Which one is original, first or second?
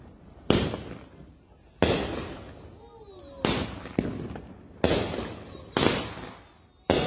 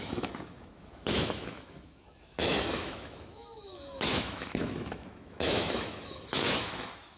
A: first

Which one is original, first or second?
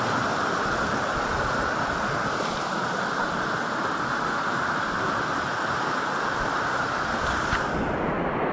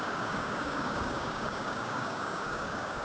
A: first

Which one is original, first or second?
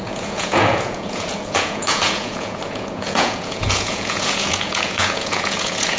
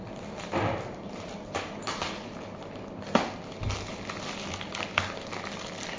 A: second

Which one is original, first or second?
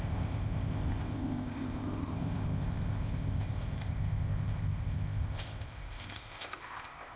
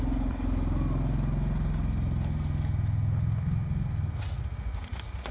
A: second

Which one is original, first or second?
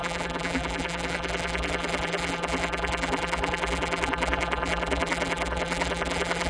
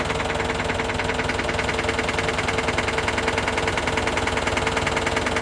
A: second